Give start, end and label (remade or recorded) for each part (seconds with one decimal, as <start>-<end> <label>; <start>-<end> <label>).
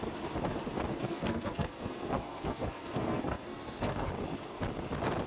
0.0-0.9 recorded; 0.9-4.1 remade; 4.1-5.3 recorded